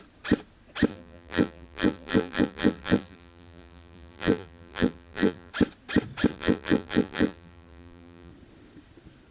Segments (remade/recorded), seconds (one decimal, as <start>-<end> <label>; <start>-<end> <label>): 0.0-0.9 recorded; 0.9-5.5 remade; 5.5-6.3 recorded; 6.3-8.3 remade; 8.3-9.3 recorded